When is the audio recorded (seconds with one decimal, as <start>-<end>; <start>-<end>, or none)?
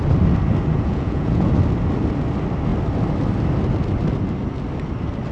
0.0-0.7; 1.5-5.3